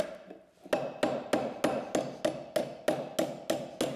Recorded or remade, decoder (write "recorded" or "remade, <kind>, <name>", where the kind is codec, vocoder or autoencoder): recorded